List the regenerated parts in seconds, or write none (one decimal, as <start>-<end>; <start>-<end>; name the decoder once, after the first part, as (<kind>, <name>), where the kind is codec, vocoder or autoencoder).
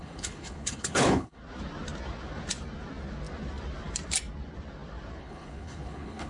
0.0-1.4 (codec, HILCodec); 5.2-6.3